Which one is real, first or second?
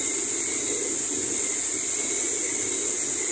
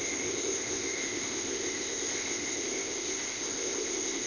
first